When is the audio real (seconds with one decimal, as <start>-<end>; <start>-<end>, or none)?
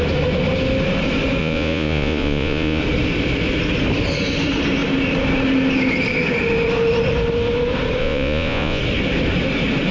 0.0-1.4; 2.8-8.0; 8.8-9.9